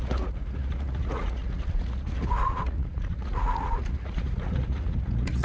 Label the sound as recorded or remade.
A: remade